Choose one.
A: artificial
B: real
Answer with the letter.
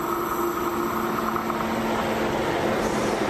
B